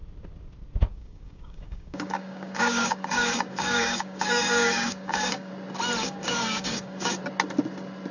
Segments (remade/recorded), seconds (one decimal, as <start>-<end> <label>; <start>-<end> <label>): 0.0-0.9 recorded; 0.9-5.5 remade; 5.5-6.0 recorded; 6.0-7.2 remade; 7.2-8.1 recorded